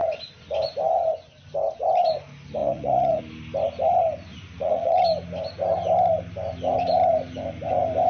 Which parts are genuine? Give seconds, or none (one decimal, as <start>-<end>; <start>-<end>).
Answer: 0.0-2.6; 3.2-4.3; 5.0-8.1